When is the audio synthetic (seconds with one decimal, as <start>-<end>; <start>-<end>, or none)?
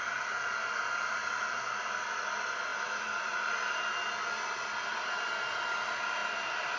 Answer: none